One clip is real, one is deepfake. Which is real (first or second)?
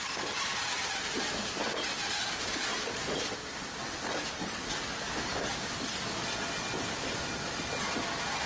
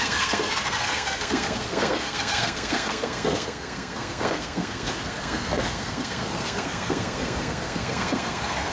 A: first